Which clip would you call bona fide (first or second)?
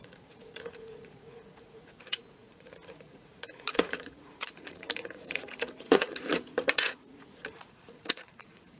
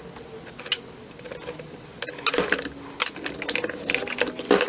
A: second